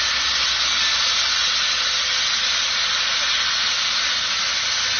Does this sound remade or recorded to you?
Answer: recorded